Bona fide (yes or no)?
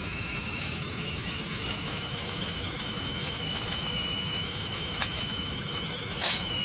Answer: no